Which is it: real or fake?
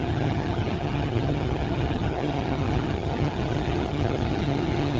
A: fake